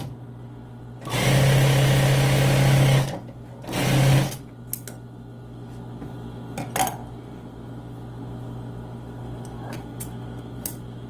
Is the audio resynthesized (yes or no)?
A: no